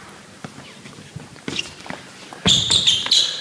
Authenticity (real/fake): real